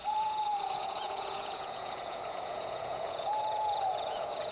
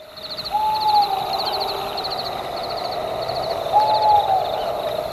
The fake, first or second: first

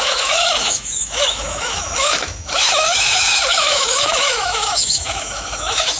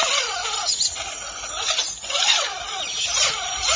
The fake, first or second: first